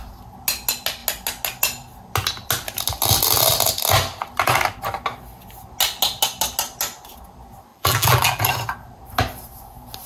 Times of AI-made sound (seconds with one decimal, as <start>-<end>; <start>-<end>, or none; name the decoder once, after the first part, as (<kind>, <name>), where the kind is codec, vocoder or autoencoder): 7.7-8.5 (vocoder, BigVGAN v2)